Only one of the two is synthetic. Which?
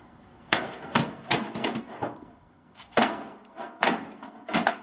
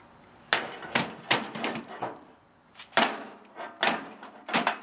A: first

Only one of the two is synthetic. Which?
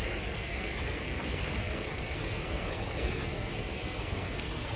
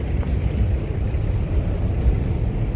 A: first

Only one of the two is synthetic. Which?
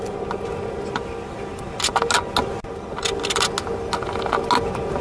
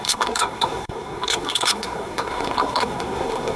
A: second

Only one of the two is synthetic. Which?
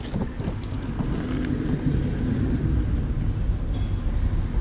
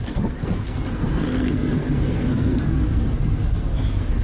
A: second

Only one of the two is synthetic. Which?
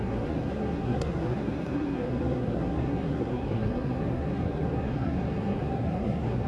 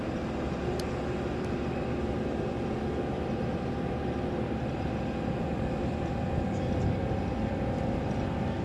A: first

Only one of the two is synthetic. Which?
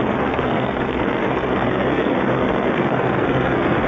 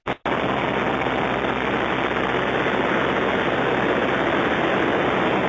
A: first